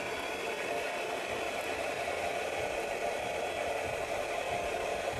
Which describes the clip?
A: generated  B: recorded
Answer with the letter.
B